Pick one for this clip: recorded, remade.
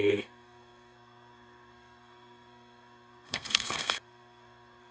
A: remade